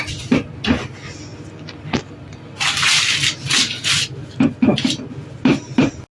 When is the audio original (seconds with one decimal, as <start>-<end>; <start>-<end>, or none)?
0.0-6.1